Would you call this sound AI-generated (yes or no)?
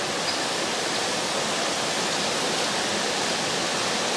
no